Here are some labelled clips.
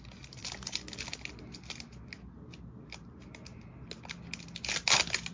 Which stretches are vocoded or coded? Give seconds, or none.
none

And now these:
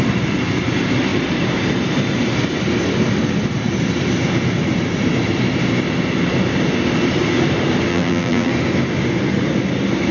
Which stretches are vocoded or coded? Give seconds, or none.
7.9-8.5 (vocoder, BigVGAN v2)

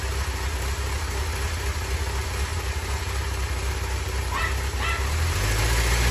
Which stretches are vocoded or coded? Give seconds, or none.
2.5-4.4 (vocoder, BigVGAN v2)

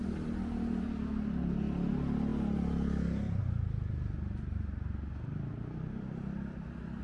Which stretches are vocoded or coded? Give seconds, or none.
none